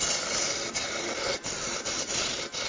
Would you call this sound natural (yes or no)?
yes